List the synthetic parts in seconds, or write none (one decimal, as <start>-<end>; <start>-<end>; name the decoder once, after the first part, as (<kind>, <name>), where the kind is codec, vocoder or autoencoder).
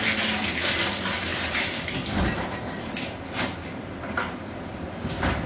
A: 1.3-4.6 (vocoder, BigVGAN v2)